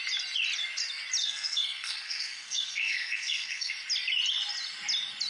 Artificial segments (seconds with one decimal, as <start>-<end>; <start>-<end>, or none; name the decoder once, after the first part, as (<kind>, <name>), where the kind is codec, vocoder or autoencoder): 1.2-3.7 (codec, SNAC)